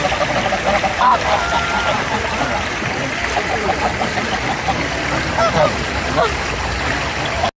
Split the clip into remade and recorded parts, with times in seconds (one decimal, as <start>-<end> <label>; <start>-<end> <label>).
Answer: 0.0-7.6 recorded